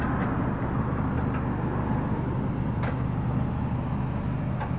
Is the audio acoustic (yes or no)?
yes